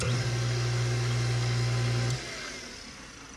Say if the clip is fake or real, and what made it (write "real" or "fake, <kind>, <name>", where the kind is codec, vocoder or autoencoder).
real